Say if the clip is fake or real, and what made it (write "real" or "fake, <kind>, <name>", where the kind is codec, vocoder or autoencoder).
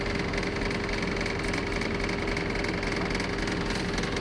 real